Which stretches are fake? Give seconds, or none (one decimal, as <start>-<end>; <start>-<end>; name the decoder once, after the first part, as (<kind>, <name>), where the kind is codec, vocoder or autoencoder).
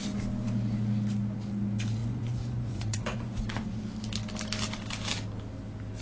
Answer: 2.0-3.4 (vocoder, Vocos)